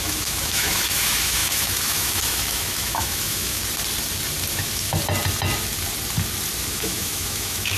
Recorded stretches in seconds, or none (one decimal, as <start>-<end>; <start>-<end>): 3.6-4.5; 4.9-6.7